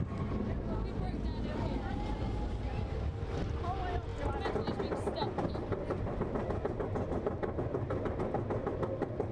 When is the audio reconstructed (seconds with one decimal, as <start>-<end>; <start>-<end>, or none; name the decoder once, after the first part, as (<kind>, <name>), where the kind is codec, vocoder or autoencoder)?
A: none